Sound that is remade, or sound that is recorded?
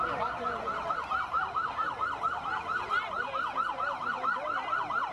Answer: recorded